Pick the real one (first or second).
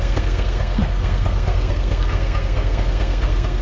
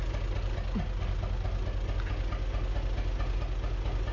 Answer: second